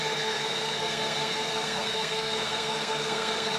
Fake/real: fake